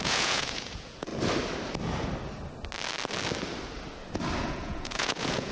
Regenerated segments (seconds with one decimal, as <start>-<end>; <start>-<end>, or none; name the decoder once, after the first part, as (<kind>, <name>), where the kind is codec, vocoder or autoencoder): 0.0-1.1 (vocoder, Vocos); 4.4-5.5